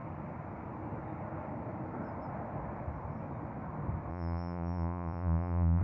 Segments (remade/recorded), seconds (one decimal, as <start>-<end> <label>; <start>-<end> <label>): 0.0-4.1 recorded; 4.1-5.8 remade

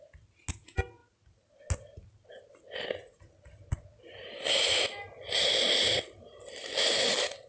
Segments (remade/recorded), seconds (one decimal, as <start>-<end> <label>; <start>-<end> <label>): 0.0-7.5 recorded

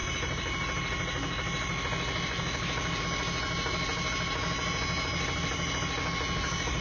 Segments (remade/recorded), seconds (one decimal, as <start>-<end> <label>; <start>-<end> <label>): 0.0-6.8 recorded

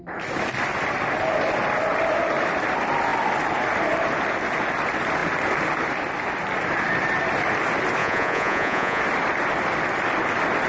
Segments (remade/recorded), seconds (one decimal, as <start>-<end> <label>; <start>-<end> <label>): 0.0-8.0 recorded; 8.0-9.0 remade; 9.0-10.7 recorded

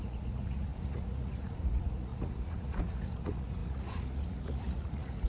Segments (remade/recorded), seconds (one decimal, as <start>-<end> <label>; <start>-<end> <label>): 0.0-5.3 remade

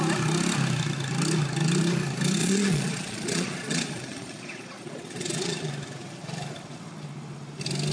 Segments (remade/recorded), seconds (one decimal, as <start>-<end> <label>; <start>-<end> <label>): 0.0-2.4 recorded; 2.4-5.7 remade; 5.7-7.9 recorded

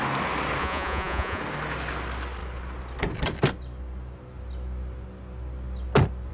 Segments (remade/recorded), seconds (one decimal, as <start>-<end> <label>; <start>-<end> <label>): 0.0-0.6 recorded; 0.6-1.4 remade; 1.4-6.3 recorded

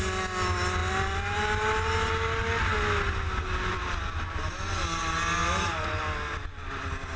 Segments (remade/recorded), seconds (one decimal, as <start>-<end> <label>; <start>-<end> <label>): 0.0-7.2 recorded